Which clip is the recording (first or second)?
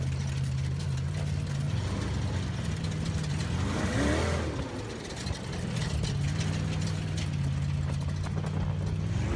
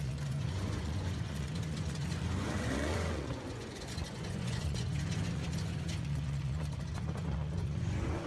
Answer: first